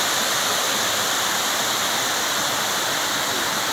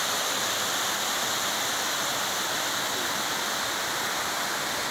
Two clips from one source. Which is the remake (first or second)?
first